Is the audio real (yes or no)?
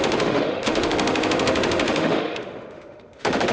no